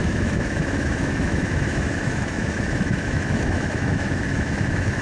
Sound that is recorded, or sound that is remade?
remade